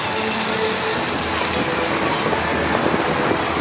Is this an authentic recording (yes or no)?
yes